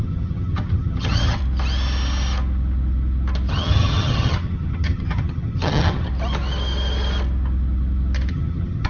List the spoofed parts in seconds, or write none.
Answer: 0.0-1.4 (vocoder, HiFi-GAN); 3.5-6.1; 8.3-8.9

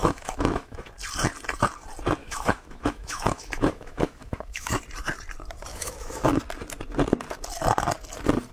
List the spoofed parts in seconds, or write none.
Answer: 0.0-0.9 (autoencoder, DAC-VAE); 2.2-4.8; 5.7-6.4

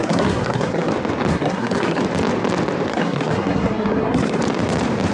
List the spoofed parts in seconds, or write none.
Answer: 0.0-0.9 (codec, SNAC); 1.3-2.0; 2.9-4.4